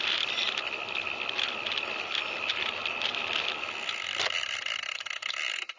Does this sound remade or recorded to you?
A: remade